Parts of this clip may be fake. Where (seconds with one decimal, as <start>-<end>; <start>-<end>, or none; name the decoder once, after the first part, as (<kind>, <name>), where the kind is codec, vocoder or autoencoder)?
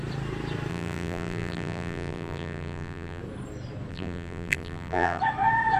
0.7-3.2 (vocoder, BigVGAN v2); 3.9-5.2